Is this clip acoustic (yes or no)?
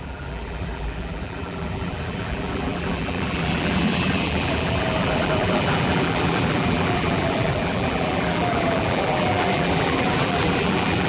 no